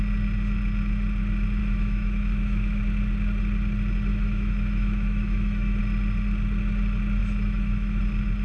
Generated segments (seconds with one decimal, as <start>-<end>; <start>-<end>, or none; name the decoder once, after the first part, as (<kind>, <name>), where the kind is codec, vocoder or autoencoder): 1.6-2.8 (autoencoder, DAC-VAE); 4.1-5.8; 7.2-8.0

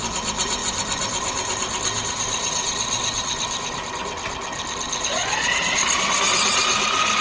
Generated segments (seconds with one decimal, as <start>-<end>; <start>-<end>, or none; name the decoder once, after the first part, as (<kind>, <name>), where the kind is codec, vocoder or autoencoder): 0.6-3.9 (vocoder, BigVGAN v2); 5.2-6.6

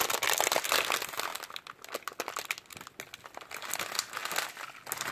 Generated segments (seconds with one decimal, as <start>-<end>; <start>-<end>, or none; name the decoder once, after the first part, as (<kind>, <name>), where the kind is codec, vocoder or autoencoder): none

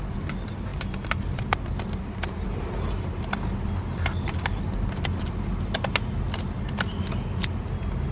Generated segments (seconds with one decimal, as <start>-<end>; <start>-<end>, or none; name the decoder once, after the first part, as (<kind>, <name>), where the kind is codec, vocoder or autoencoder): none

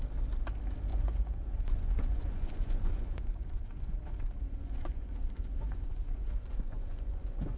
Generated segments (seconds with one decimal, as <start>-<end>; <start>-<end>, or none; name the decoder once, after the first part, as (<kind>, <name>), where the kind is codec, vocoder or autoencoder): 0.9-4.0 (vocoder, Vocos); 4.6-7.6

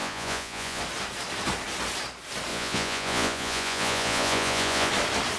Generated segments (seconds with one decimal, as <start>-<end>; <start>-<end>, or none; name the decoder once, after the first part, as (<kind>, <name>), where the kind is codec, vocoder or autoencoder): 0.0-0.8 (vocoder, Vocos); 2.5-4.9

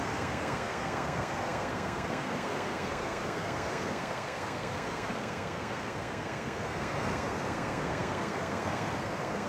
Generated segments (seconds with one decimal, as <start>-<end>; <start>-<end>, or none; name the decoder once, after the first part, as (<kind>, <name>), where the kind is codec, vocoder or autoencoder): 0.0-9.5 (codec, SNAC)